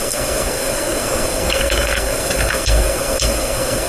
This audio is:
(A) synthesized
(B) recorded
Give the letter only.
A